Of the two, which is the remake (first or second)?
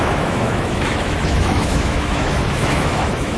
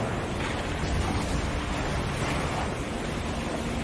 first